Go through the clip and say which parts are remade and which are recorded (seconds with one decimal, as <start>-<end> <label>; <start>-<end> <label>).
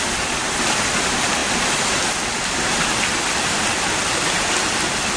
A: 0.0-5.2 recorded